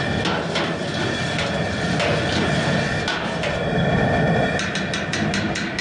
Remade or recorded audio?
recorded